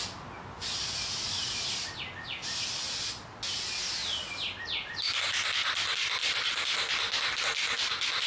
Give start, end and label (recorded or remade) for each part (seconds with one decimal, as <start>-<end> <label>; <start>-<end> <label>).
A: 0.0-8.3 recorded